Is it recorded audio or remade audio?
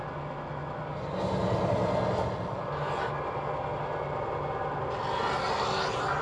recorded